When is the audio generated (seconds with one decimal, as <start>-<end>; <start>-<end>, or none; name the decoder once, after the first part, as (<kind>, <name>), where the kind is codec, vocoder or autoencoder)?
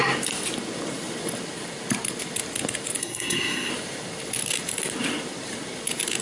3.0-3.7 (codec, SNAC)